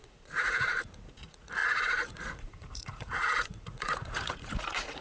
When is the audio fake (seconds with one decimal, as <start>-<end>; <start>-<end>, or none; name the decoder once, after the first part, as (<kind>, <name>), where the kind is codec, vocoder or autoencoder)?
0.0-5.0 (vocoder, Vocos)